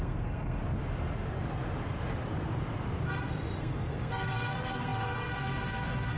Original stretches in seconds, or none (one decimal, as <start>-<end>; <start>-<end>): 0.6-3.6